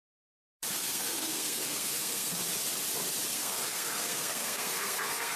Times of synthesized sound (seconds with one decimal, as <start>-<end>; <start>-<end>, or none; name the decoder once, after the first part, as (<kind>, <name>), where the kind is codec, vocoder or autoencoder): 0.7-2.4 (codec, SNAC); 3.3-5.4